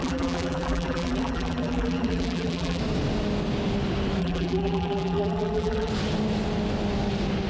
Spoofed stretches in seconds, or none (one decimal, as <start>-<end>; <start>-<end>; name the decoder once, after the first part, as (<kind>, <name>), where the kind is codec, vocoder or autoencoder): 0.0-2.8 (vocoder, BigVGAN v2); 4.2-5.9